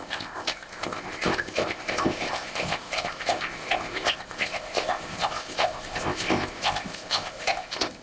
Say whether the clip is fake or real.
fake